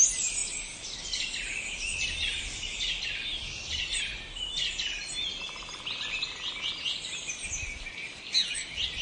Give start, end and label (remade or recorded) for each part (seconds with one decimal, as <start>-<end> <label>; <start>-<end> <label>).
0.0-9.0 recorded